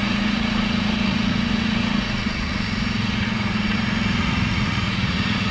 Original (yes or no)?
no